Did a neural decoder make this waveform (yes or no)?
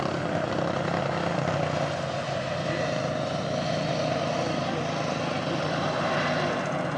no